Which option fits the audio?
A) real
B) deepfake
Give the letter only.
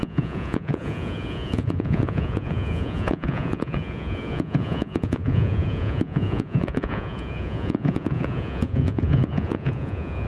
B